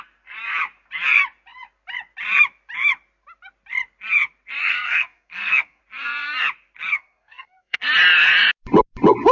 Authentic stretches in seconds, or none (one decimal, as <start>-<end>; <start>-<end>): 0.0-4.6; 5.8-6.9; 7.8-9.3